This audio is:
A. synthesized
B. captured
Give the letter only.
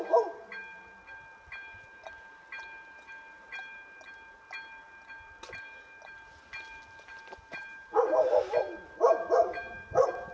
B